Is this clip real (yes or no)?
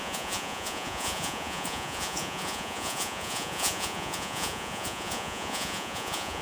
no